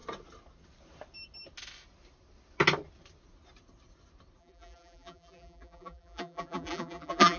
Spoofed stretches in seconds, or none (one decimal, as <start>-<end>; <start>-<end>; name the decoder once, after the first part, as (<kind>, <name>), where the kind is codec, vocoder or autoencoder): 4.4-7.4 (vocoder, BigVGAN v2)